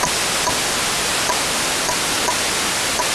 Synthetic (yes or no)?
no